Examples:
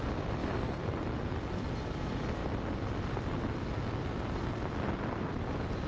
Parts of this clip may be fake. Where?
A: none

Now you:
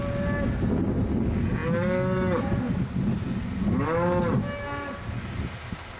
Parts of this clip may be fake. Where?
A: none